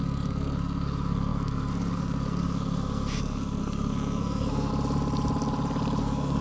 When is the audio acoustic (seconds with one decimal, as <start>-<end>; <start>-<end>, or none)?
4.7-6.0